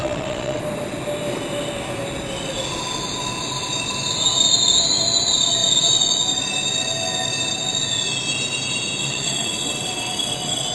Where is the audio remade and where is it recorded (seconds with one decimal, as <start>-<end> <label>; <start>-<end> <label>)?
0.0-0.6 remade; 0.6-9.0 recorded; 9.0-10.7 remade